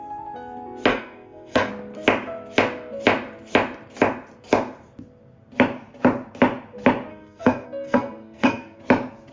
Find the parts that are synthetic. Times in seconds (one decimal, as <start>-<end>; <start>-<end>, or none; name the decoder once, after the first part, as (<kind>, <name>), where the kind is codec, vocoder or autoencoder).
0.9-1.7 (codec, SNAC); 7.1-8.8